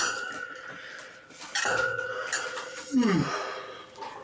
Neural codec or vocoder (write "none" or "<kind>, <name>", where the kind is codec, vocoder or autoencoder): none